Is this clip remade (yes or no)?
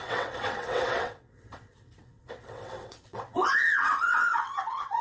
yes